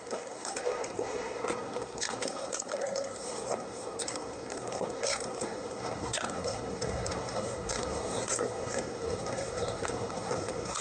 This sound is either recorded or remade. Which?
remade